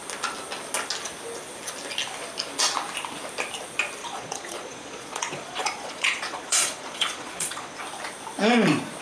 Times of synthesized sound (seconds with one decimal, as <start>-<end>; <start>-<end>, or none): 4.0-7.8